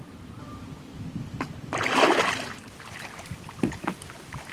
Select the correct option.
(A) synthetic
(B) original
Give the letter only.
A